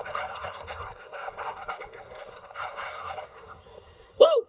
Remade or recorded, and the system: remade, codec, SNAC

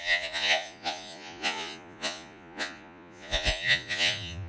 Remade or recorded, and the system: remade, vocoder, Vocos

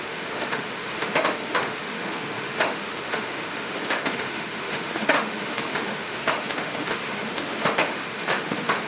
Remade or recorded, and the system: remade, autoencoder, DAC-VAE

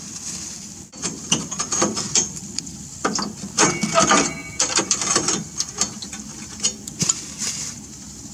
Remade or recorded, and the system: remade, vocoder, BigVGAN v2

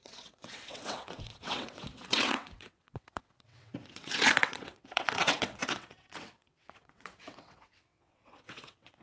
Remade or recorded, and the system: remade, vocoder, WaveNeXt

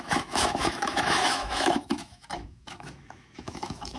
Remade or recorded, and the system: remade, autoencoder, DAC-VAE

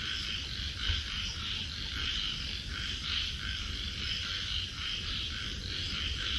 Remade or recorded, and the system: recorded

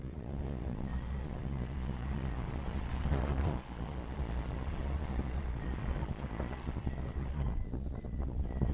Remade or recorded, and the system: remade, vocoder, Vocos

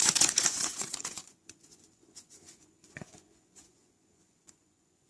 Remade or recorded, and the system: remade, vocoder, Vocos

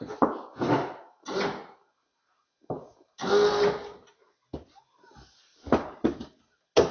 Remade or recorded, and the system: recorded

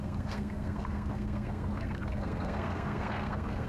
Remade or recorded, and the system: remade, codec, SNAC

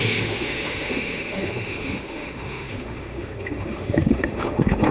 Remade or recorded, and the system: remade, autoencoder, DAC-VAE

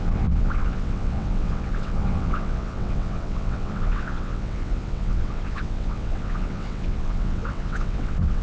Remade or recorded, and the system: remade, vocoder, WaveNeXt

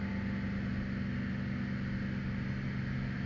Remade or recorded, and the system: recorded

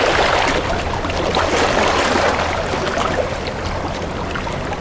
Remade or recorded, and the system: recorded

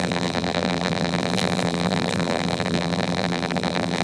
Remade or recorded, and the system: remade, vocoder, BigVGAN v2